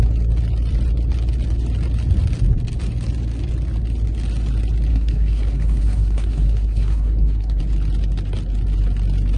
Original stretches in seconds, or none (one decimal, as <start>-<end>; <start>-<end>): 0.0-4.9; 7.6-9.4